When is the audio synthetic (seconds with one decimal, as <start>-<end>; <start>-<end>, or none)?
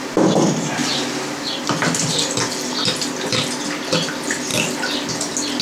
none